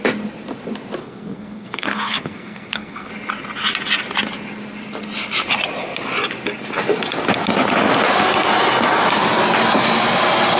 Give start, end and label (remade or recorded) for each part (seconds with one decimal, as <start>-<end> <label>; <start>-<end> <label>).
0.0-1.0 recorded; 1.0-3.1 remade; 3.1-10.6 recorded